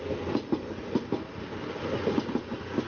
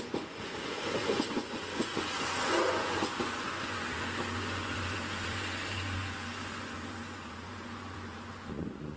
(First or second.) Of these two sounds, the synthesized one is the second